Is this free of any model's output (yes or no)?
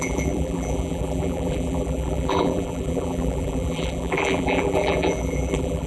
no